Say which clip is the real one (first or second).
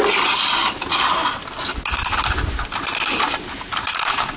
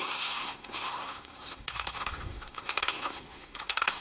first